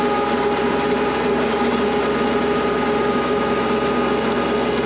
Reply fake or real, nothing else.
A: real